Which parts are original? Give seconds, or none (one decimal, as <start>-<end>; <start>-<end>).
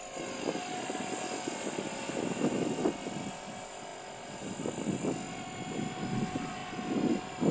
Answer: 0.0-7.5